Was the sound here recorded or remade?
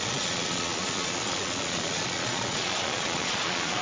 remade